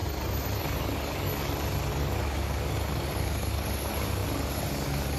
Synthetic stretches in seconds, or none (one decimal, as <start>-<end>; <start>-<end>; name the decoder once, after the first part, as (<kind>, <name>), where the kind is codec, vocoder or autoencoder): 0.6-1.3 (codec, DAC); 1.9-5.2